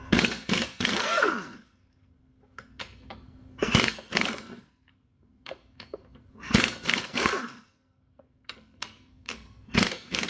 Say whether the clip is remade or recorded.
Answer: remade